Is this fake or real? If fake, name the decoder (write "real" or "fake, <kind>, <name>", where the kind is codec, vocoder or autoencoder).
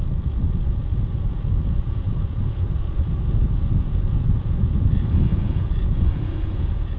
fake, vocoder, Vocos